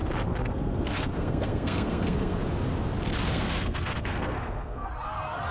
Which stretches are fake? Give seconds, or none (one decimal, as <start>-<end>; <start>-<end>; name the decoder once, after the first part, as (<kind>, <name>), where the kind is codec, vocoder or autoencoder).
0.0-2.4 (codec, SNAC); 3.3-4.9